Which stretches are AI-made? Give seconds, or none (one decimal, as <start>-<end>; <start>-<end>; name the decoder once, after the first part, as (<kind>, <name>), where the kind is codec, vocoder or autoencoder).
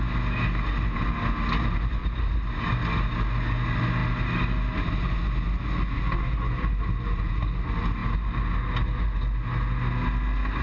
2.0-2.7 (vocoder, BigVGAN v2)